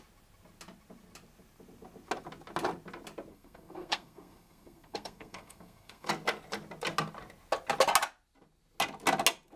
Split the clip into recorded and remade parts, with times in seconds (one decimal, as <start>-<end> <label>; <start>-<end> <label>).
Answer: 0.0-3.3 recorded; 3.3-6.1 remade; 6.1-9.6 recorded